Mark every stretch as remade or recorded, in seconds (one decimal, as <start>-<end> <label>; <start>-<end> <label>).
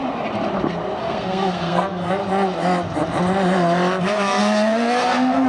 0.0-1.0 recorded; 1.0-2.2 remade; 2.2-4.0 recorded; 4.0-5.5 remade